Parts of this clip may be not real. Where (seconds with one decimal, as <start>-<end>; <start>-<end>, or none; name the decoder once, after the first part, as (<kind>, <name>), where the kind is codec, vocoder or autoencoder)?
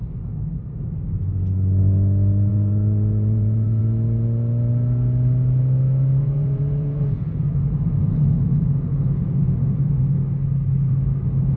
2.5-3.8 (vocoder, Vocos); 6.2-10.0